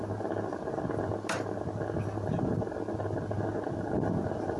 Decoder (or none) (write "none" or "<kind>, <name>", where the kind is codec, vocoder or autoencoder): none